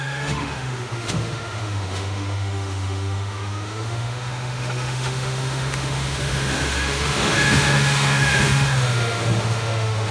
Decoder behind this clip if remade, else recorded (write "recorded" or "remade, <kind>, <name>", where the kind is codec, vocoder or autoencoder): remade, autoencoder, DAC-VAE